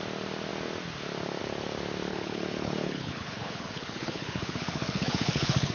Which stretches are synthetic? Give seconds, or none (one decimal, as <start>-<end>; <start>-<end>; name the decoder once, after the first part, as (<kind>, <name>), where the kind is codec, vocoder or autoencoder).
2.1-5.7 (codec, HILCodec)